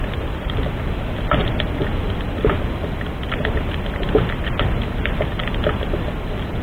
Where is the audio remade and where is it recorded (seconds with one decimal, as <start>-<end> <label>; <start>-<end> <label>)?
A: 0.0-6.6 recorded